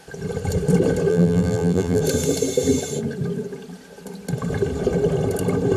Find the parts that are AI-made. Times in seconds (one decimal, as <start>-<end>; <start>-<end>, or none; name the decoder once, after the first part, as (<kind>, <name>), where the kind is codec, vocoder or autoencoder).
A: 1.1-2.0 (vocoder, BigVGAN v2)